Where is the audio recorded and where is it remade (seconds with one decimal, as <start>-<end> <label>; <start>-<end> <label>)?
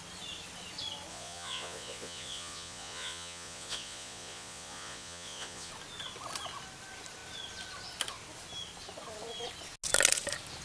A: 0.0-1.1 recorded; 1.1-5.7 remade; 5.7-10.6 recorded